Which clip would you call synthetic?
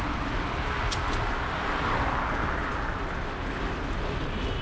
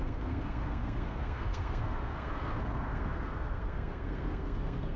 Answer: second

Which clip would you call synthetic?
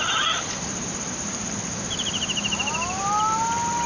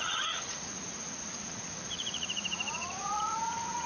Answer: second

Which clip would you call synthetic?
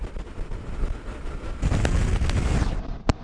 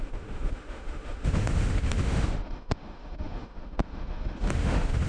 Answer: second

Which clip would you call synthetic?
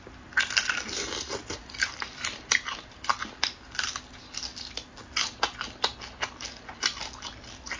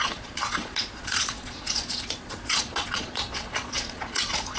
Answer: second